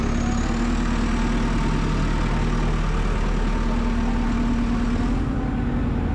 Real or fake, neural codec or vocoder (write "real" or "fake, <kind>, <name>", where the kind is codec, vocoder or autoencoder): real